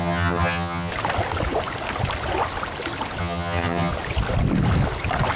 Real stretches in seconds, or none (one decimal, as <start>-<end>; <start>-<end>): 0.9-3.2; 3.9-5.4